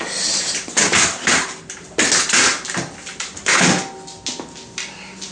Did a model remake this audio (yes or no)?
no